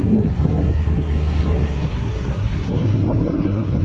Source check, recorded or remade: remade